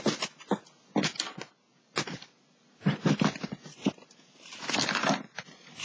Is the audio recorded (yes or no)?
yes